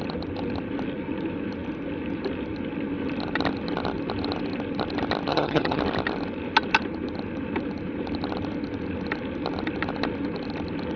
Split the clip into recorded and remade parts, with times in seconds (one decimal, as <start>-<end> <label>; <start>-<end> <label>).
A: 0.0-5.3 recorded; 5.3-5.8 remade; 5.8-11.0 recorded